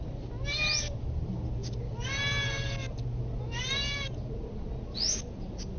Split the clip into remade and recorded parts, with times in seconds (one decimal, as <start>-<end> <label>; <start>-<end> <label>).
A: 0.0-5.8 recorded